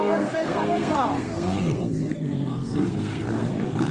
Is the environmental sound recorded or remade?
remade